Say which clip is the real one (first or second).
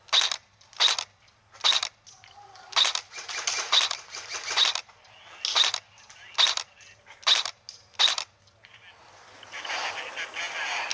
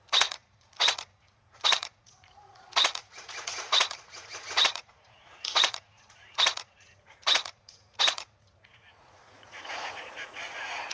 first